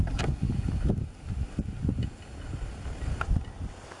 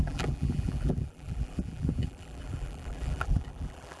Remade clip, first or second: second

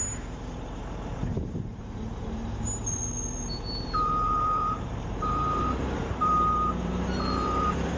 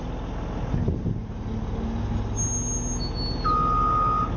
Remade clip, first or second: first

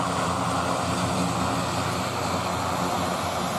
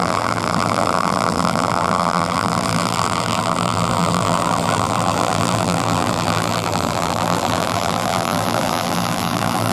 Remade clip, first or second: second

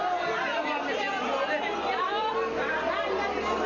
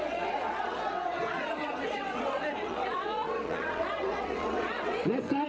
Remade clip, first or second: second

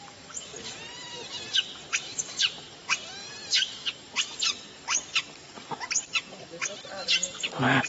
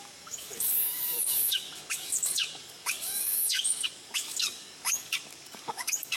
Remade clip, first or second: second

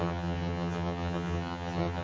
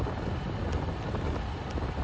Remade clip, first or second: first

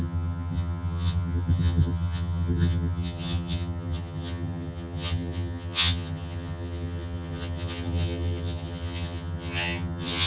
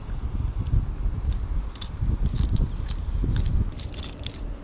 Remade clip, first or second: first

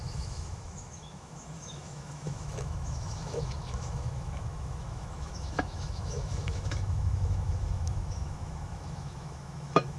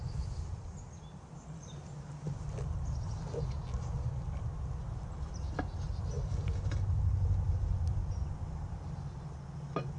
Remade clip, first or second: first